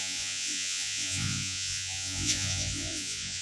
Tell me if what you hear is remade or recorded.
remade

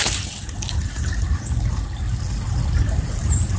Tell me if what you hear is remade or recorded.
recorded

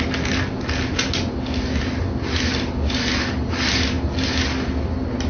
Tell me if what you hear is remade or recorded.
recorded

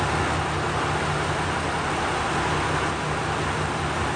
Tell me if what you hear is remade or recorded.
recorded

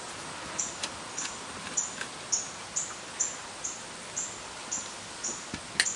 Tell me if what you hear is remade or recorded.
recorded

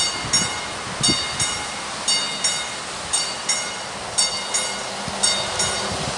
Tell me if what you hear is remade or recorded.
recorded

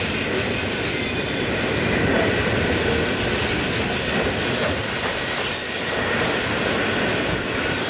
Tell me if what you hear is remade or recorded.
recorded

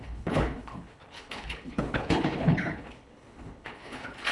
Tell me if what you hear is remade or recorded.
remade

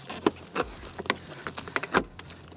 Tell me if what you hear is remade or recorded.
recorded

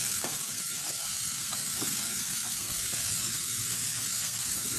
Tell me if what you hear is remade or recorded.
remade